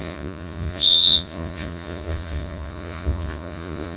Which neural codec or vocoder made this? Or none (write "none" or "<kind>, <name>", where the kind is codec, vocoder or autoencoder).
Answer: vocoder, Vocos